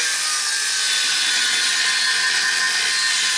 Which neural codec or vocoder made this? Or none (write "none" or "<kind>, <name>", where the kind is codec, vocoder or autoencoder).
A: none